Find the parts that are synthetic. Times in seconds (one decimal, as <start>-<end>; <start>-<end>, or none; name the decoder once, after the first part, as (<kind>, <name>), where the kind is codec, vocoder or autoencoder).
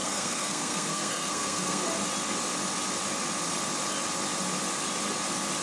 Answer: 0.0-1.8 (codec, SNAC)